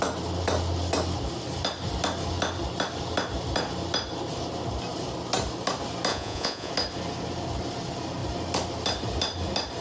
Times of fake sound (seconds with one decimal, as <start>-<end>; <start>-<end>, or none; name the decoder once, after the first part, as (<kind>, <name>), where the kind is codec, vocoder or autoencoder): 6.1-6.7 (vocoder, Vocos)